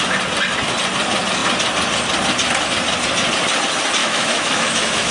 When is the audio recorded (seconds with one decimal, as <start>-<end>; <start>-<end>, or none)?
0.0-4.0